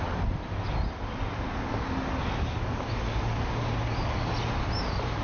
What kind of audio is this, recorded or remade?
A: recorded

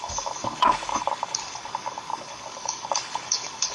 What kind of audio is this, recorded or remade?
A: remade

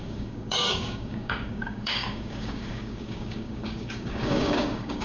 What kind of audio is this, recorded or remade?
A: remade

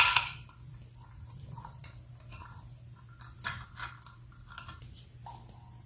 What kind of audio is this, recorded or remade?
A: recorded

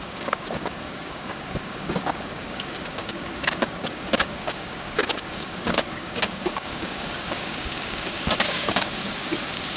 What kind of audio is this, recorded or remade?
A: remade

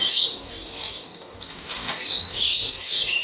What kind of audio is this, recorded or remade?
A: remade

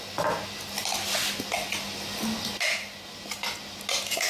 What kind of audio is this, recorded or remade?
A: recorded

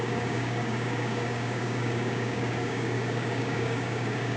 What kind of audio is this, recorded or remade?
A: remade